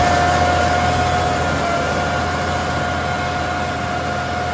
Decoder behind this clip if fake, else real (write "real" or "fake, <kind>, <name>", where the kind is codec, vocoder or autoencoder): real